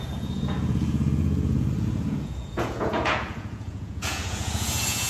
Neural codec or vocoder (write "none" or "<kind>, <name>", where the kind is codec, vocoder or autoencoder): vocoder, Vocos